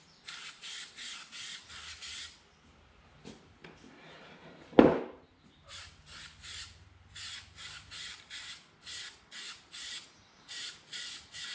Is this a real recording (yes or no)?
yes